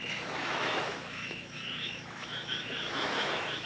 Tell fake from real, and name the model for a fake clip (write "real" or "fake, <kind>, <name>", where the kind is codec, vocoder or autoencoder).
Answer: fake, autoencoder, DAC-VAE